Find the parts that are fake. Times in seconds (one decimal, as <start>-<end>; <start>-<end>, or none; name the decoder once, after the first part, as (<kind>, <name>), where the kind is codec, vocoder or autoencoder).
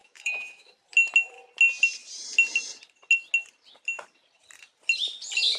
0.0-0.7 (autoencoder, DAC-VAE)